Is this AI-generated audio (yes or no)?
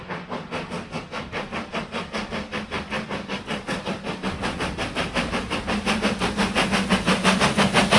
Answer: no